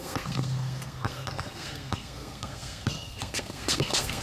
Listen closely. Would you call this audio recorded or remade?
remade